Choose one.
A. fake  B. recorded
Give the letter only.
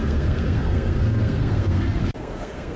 A